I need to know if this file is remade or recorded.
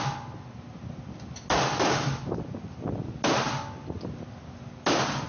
recorded